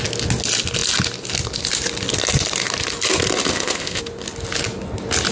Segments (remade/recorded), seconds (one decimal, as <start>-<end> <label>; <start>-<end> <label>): 0.0-3.5 recorded; 3.5-4.0 remade; 4.0-5.3 recorded